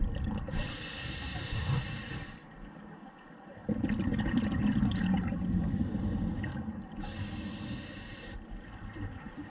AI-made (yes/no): no